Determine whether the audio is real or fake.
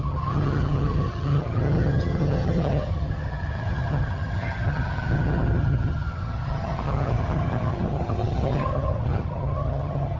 fake